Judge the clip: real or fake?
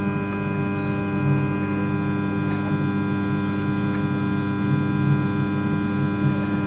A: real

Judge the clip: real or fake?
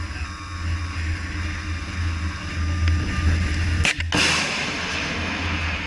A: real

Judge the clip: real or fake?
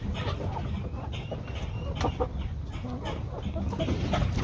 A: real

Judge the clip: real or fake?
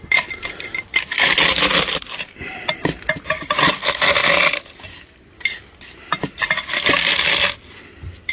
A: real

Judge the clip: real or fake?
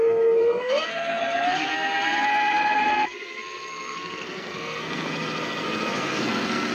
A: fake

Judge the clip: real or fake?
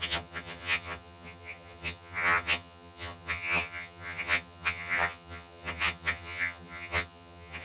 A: fake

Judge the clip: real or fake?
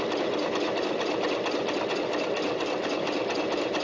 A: real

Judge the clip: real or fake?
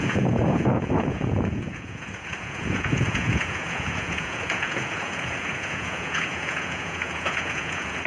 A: fake